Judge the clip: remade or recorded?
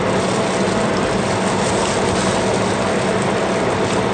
recorded